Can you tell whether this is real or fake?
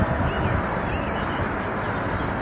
real